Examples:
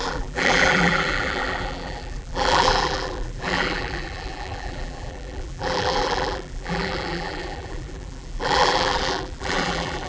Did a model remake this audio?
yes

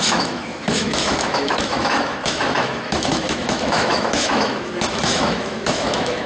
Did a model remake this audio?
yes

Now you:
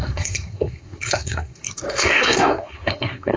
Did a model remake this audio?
yes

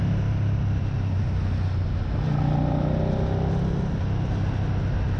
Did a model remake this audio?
no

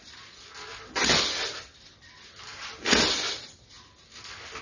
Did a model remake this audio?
no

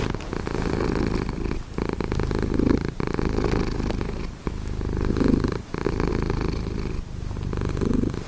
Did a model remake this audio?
no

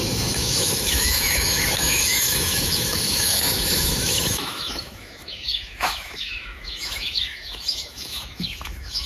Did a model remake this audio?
yes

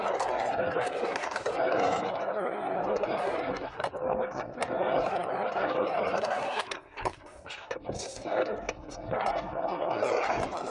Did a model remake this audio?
yes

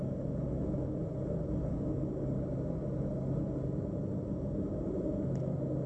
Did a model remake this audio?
no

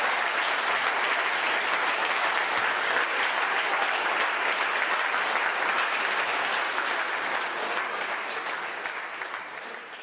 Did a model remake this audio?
no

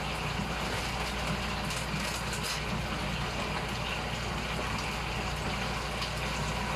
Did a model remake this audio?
no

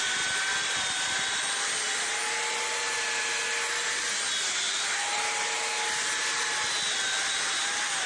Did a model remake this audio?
no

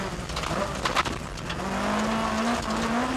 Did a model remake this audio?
no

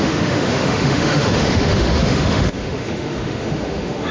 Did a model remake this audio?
yes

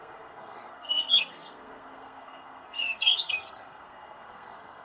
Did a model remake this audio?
yes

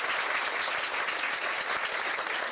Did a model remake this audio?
no